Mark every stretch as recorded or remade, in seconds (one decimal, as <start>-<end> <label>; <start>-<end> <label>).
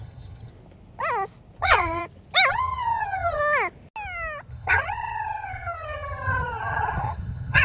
0.0-0.5 remade; 0.5-1.6 recorded; 1.6-2.0 remade; 2.0-2.5 recorded; 2.5-3.4 remade; 3.4-4.5 recorded; 4.5-7.6 remade